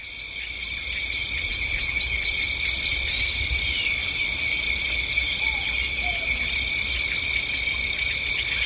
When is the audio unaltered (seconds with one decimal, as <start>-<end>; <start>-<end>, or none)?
0.0-8.7